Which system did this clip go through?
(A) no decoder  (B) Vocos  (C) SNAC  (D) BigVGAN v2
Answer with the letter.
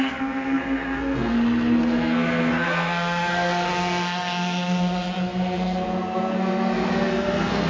C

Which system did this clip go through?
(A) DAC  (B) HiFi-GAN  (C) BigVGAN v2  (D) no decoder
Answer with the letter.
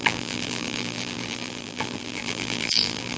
C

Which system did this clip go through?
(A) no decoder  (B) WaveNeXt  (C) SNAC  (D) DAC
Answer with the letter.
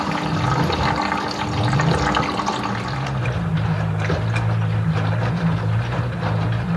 A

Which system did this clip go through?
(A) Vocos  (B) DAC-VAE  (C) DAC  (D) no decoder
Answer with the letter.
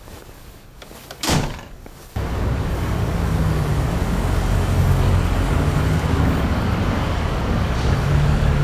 C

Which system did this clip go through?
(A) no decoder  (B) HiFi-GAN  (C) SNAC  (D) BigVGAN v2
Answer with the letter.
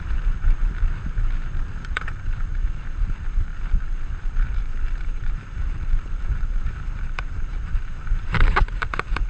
D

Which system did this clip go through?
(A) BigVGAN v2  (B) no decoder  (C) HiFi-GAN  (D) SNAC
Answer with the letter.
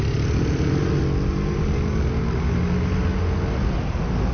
B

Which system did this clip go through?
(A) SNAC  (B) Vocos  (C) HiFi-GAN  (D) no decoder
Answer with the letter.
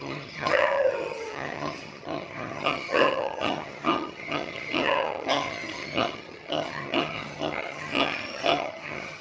C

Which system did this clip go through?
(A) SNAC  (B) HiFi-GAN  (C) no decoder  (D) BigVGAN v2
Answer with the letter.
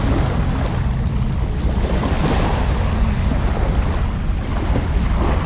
C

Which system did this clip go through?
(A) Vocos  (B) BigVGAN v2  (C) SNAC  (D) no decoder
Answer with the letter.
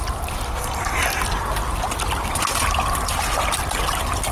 D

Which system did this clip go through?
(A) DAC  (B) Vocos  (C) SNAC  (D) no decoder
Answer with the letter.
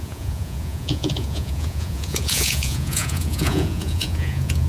B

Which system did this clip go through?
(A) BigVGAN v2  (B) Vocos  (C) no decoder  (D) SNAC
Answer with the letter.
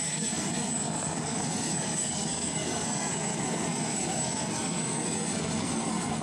D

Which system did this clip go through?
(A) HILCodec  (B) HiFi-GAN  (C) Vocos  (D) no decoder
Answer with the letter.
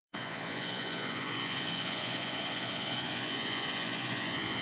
C